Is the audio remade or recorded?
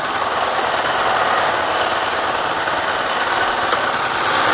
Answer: recorded